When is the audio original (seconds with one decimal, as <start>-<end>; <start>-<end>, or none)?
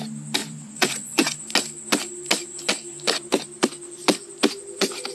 0.0-0.4; 1.4-5.1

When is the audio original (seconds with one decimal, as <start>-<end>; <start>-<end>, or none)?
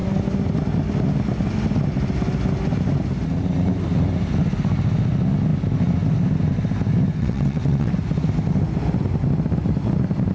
0.0-7.2; 7.9-10.3